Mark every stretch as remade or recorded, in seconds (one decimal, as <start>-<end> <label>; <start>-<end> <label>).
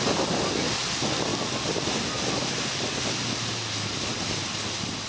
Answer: 0.0-4.1 recorded; 4.1-5.1 remade